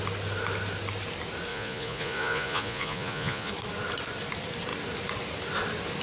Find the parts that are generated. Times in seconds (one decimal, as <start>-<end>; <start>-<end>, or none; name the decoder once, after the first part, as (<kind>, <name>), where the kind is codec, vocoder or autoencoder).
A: 1.5-3.5 (vocoder, Vocos)